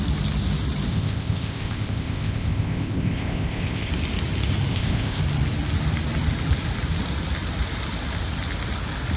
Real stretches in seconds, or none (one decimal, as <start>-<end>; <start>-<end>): 0.0-0.9; 3.9-4.7; 5.2-9.2